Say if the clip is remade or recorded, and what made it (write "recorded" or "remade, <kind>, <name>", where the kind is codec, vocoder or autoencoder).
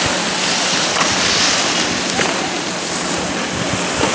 recorded